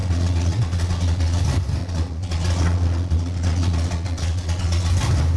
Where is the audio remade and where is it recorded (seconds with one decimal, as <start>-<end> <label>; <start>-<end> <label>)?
0.0-1.4 remade; 1.4-1.8 recorded; 1.8-4.9 remade; 4.9-5.4 recorded